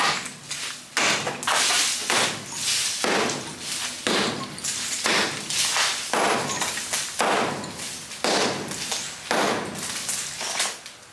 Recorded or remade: recorded